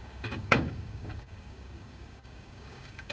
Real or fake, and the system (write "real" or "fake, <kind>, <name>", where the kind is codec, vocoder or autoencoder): fake, codec, DAC